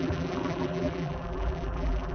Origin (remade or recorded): remade